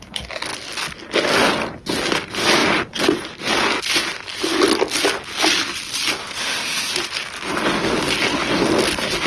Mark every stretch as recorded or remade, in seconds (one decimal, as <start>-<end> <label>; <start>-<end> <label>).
0.0-6.2 recorded; 6.2-6.9 remade; 6.9-9.3 recorded